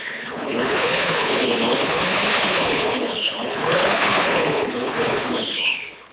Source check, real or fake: fake